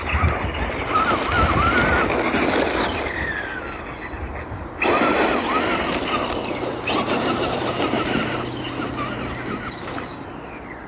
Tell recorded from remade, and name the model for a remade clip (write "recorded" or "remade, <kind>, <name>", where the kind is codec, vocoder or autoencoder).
recorded